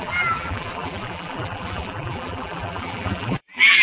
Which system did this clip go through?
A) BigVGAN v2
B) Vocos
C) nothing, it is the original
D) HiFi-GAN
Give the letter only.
A